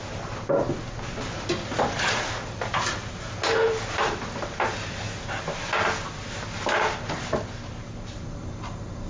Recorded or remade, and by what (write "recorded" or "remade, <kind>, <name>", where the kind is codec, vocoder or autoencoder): recorded